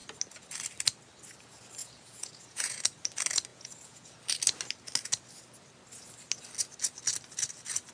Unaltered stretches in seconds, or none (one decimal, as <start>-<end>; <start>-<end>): 0.0-1.8; 2.8-3.5; 4.2-7.9